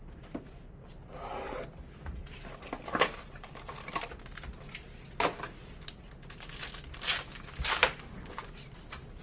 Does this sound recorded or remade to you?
recorded